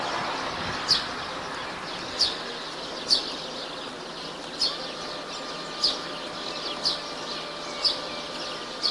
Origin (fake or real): real